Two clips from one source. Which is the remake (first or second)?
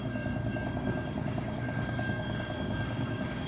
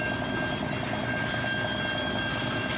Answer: first